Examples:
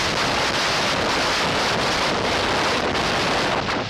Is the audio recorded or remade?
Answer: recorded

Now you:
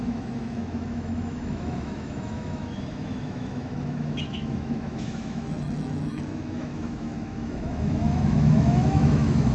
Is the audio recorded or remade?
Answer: remade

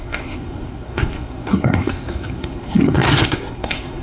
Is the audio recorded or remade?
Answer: remade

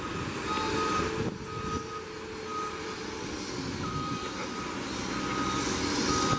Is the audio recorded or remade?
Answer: recorded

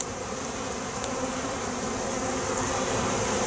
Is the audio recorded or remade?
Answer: remade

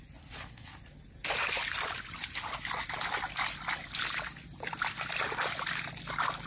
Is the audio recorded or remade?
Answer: recorded